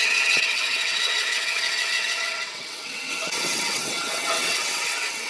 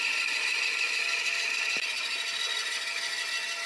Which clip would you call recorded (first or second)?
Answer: second